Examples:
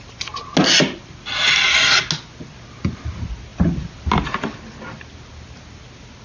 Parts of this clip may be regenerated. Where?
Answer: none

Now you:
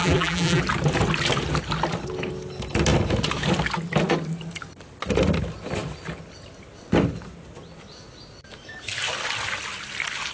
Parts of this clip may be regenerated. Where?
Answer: 0.0-0.6 (vocoder, BigVGAN v2)